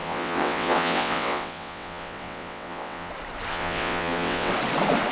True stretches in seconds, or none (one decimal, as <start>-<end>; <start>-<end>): 3.1-3.5; 4.5-5.1